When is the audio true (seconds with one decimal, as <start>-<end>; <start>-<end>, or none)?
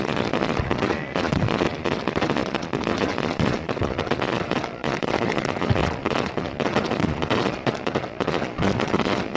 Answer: none